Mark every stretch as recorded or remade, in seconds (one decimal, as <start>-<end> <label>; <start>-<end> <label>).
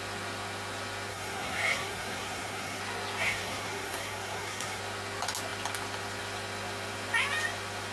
0.0-1.1 recorded; 1.1-2.8 remade; 2.8-3.2 recorded; 3.2-4.8 remade; 4.8-7.9 recorded